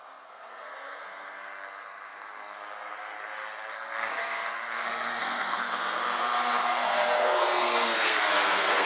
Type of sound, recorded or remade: remade